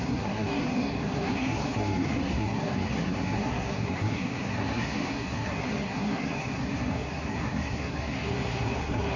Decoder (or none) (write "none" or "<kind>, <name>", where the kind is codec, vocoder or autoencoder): codec, SNAC